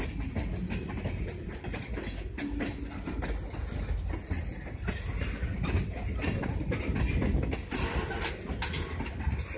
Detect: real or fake real